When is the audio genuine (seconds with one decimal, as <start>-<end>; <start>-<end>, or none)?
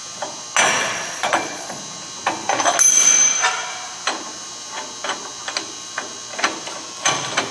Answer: 0.0-0.8; 1.8-7.5